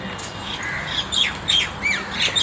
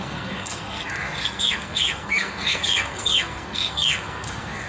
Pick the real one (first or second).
first